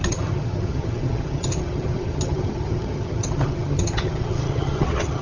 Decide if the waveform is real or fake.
fake